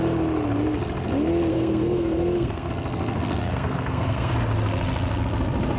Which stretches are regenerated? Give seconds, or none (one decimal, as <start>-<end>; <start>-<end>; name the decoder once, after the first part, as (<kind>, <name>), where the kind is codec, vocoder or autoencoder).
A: 1.5-2.7 (codec, SNAC); 3.4-4.3